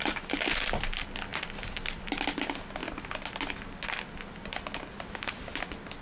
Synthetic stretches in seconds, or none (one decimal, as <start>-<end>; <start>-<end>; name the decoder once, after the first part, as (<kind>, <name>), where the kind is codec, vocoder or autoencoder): none